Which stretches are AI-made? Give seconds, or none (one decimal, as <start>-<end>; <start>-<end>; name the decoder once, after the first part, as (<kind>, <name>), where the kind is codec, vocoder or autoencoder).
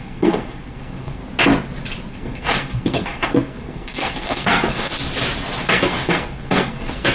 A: 0.0-1.2 (codec, SNAC); 2.1-4.9; 5.7-7.1